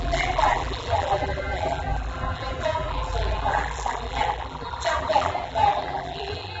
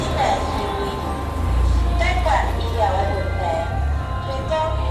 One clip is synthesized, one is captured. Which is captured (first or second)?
second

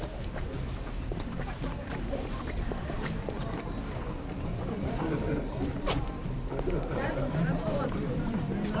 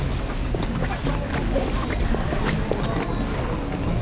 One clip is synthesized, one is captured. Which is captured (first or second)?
second